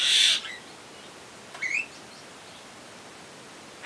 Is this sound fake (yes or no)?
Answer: no